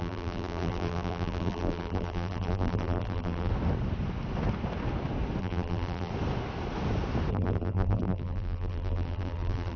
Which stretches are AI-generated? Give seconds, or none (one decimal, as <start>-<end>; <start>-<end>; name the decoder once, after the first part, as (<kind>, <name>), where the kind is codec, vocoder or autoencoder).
0.0-3.5 (vocoder, BigVGAN v2); 5.4-6.1; 7.3-9.8